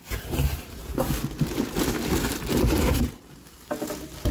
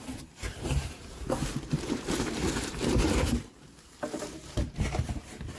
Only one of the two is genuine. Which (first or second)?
first